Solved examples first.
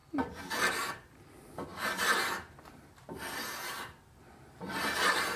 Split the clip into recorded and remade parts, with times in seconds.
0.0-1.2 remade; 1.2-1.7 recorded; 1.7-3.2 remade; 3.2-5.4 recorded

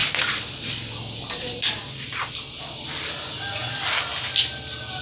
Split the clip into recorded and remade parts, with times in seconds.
0.0-5.0 recorded